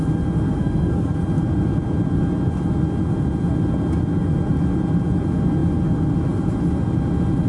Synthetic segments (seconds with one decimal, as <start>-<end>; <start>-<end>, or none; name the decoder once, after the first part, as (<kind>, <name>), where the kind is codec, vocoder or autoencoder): 0.5-1.1 (codec, SNAC)